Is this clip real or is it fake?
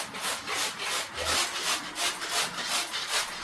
real